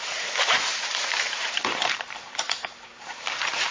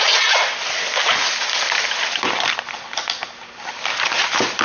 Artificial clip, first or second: first